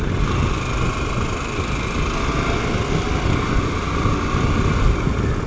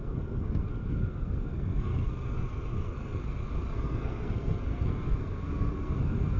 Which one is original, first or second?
first